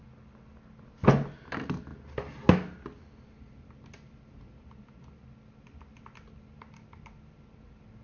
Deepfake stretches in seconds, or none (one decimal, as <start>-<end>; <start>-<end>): none